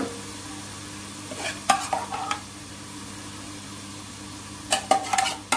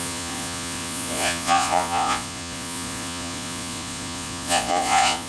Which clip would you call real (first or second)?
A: first